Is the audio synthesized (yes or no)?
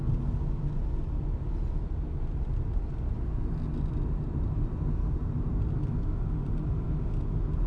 no